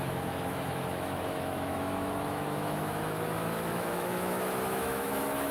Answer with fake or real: fake